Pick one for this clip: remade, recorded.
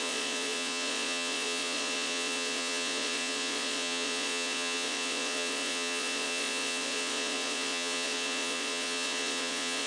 remade